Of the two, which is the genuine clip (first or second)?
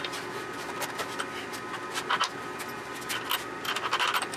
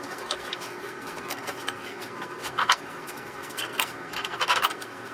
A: first